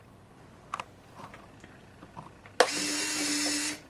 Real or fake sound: real